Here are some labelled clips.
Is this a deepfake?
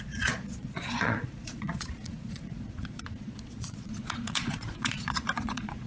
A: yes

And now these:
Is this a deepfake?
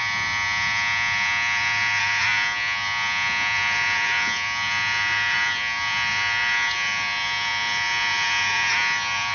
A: yes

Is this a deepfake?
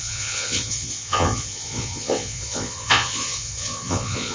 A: yes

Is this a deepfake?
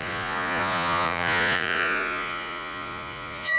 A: yes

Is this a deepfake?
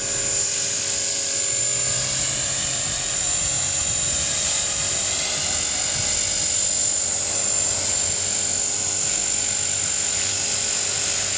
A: no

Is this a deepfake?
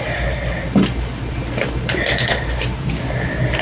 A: no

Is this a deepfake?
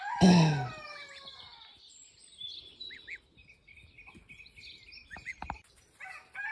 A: no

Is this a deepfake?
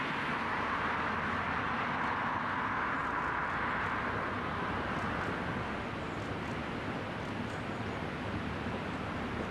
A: no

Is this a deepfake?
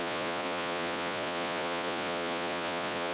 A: yes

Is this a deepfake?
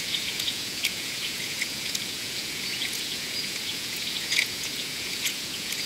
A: yes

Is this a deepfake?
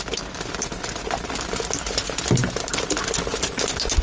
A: no